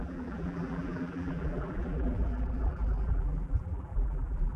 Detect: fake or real fake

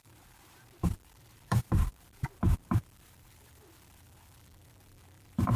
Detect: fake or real fake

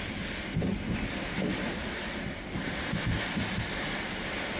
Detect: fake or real real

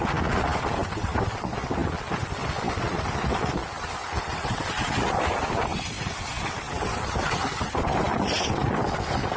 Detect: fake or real real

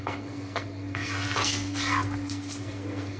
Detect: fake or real fake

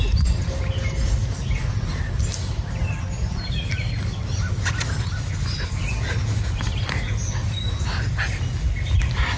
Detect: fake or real real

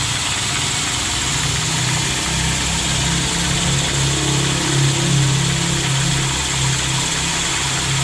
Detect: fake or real real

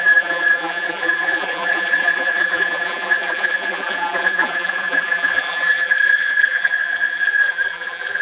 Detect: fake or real fake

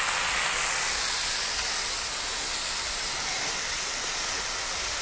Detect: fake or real real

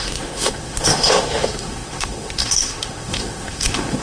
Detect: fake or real fake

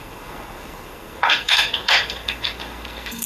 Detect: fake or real fake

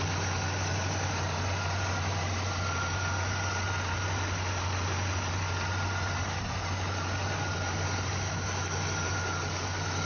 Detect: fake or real real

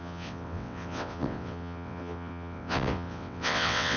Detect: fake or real fake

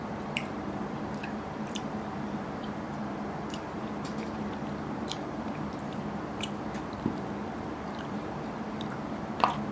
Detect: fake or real fake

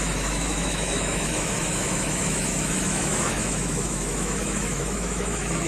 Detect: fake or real fake